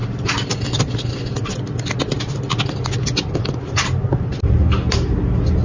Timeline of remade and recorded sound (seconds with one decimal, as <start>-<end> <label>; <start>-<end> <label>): 0.0-5.6 recorded

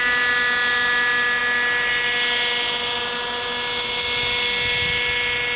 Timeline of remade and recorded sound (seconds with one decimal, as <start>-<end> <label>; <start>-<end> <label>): 0.0-5.6 recorded